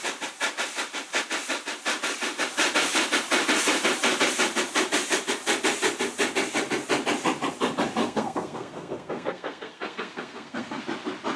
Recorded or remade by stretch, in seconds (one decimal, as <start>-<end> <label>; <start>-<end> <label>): 0.0-8.0 recorded; 8.0-10.8 remade; 10.8-11.4 recorded